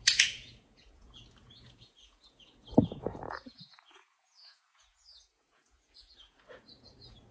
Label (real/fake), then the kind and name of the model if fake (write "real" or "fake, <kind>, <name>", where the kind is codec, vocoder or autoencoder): fake, vocoder, Vocos